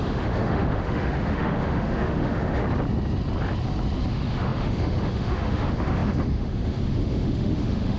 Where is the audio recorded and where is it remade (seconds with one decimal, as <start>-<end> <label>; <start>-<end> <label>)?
0.0-2.6 remade; 2.6-4.1 recorded; 4.1-8.0 remade